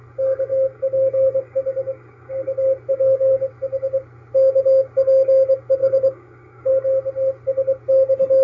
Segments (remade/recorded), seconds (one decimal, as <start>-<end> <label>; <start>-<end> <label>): 0.0-0.5 recorded; 0.5-2.3 remade; 2.3-2.9 recorded; 2.9-3.5 remade; 3.5-5.8 recorded; 5.8-6.7 remade; 6.7-8.4 recorded